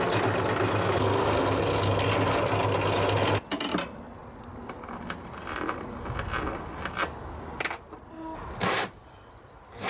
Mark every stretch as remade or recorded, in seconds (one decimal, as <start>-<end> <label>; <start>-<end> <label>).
0.0-9.9 recorded